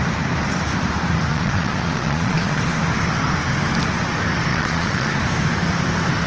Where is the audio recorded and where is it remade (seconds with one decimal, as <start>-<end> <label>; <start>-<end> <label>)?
0.0-1.3 recorded; 1.3-2.6 remade; 2.6-4.5 recorded; 4.5-5.1 remade; 5.1-6.3 recorded